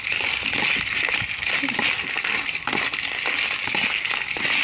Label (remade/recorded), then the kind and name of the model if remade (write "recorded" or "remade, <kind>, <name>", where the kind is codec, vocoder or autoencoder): recorded